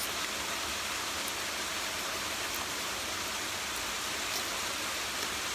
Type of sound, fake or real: real